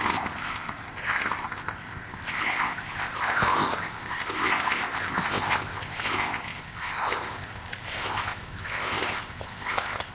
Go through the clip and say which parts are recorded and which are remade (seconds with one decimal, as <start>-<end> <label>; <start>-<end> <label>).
0.0-10.1 remade